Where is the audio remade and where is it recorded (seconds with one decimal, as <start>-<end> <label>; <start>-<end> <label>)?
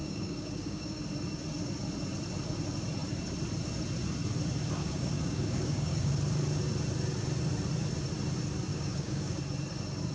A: 0.0-1.0 remade; 1.0-4.8 recorded; 4.8-6.1 remade; 6.1-8.7 recorded; 8.7-9.4 remade; 9.4-10.1 recorded